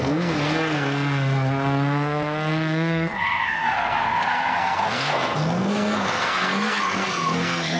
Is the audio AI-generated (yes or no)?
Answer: yes